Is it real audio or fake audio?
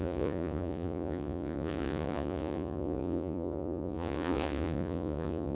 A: fake